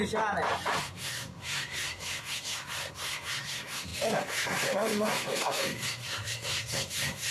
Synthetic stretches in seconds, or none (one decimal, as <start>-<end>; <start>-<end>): 0.8-7.3